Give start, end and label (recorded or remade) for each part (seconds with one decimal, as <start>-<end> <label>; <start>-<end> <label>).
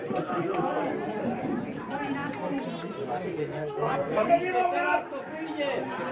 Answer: 0.0-3.4 recorded; 3.4-4.3 remade; 4.3-6.1 recorded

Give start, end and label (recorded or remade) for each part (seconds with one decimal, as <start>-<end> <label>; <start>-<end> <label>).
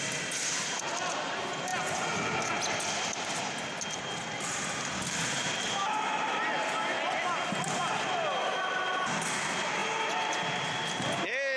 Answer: 0.0-11.6 recorded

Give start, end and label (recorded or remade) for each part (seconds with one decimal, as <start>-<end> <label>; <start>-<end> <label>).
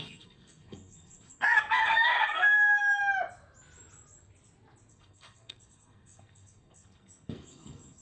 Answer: 0.0-3.0 remade; 3.0-4.9 recorded; 4.9-8.0 remade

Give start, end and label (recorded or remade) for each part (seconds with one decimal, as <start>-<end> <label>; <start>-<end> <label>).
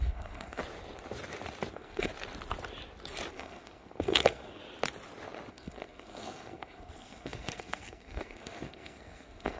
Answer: 0.0-0.6 remade; 0.6-1.7 recorded; 1.7-2.1 remade; 2.1-3.3 recorded; 3.3-4.6 remade; 4.6-5.5 recorded; 5.5-9.6 remade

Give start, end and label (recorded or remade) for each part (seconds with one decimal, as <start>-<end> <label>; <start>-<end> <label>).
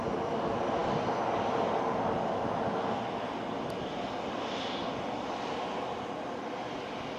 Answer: 0.0-7.2 recorded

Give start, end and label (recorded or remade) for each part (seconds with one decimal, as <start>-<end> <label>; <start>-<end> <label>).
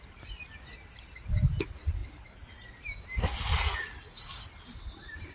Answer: 0.0-5.3 recorded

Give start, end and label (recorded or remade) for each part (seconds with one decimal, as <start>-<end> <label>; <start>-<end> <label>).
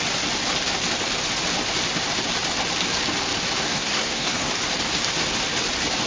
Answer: 0.0-3.6 recorded; 3.6-4.5 remade; 4.5-6.1 recorded